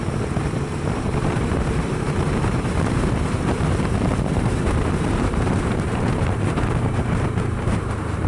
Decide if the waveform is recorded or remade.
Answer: remade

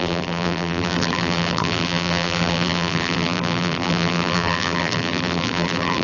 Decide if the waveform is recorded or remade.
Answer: remade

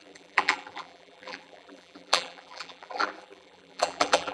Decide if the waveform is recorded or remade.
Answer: remade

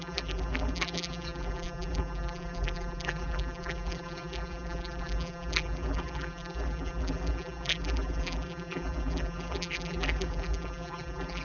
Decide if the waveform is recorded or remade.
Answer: remade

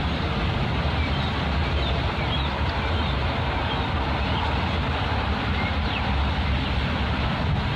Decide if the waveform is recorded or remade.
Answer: recorded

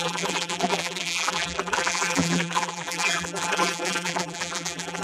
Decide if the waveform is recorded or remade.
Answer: remade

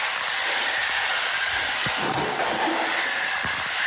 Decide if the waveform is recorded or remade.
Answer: recorded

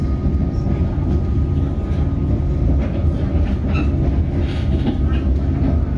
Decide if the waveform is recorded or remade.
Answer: recorded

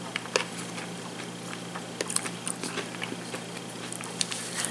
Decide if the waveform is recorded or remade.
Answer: recorded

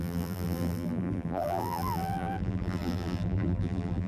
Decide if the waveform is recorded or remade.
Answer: remade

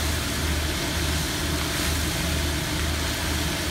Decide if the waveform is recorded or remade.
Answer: recorded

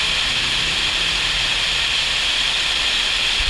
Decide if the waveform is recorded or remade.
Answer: remade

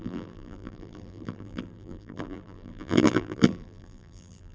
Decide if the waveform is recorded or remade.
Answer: remade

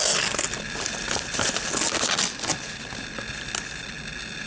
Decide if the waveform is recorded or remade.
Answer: recorded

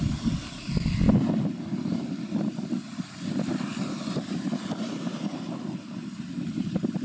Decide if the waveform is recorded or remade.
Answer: recorded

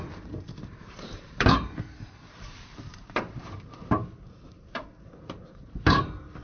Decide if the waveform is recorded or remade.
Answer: remade